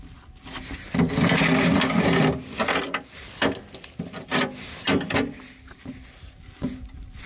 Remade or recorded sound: recorded